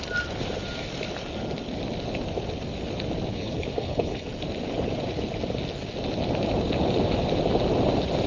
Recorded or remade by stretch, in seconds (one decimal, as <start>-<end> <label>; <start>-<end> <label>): 0.0-3.3 recorded; 3.3-4.3 remade; 4.3-8.3 recorded